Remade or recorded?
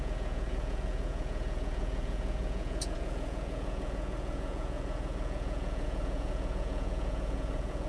remade